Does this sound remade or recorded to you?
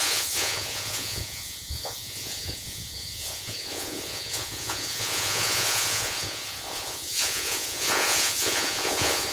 remade